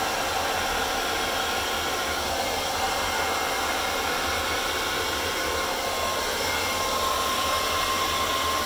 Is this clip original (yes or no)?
yes